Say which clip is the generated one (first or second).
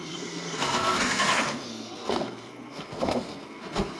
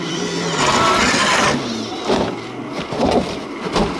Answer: first